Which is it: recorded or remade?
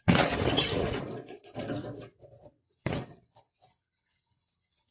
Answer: remade